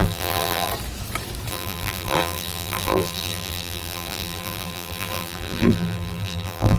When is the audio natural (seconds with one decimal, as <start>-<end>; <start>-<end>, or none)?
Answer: 0.7-1.5